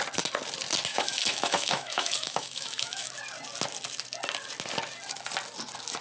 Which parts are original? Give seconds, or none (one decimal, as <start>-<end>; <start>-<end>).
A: 0.0-0.9; 3.1-6.0